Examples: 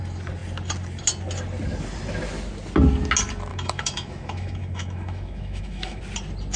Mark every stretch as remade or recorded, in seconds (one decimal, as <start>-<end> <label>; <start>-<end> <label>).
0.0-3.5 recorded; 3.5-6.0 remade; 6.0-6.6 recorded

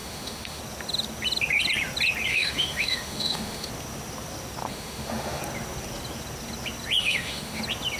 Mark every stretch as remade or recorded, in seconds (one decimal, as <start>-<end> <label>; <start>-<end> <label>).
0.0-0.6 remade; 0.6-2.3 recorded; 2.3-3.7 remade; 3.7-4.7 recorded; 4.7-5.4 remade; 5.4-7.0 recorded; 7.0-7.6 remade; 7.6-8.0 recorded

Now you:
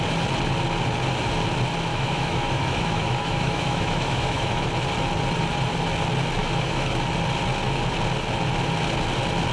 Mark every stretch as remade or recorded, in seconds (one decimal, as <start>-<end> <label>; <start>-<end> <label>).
0.0-1.9 recorded; 1.9-4.7 remade; 4.7-6.4 recorded; 6.4-6.9 remade; 6.9-9.5 recorded

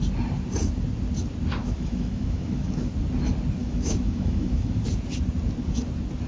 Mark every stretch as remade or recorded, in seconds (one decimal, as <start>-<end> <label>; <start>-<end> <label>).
0.0-1.6 recorded; 1.6-2.9 remade; 2.9-3.6 recorded; 3.6-4.9 remade; 4.9-6.3 recorded

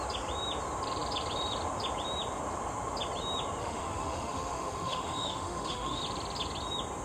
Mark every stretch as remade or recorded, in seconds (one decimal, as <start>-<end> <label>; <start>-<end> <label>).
0.0-3.6 recorded; 3.6-6.0 remade; 6.0-7.0 recorded